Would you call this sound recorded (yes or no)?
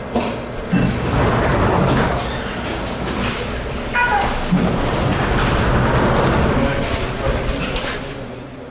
yes